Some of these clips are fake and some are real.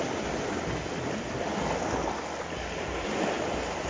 real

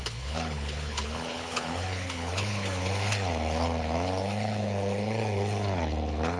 fake